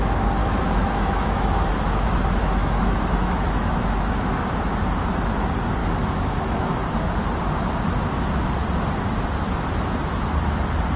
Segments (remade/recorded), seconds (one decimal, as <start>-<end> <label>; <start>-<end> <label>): 0.0-0.4 recorded; 0.4-1.7 remade; 1.7-2.4 recorded; 2.4-4.1 remade; 4.1-5.8 recorded; 5.8-6.7 remade; 6.7-11.0 recorded